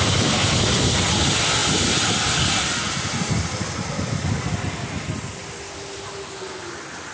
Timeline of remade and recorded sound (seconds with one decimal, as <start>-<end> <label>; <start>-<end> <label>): 0.0-7.1 recorded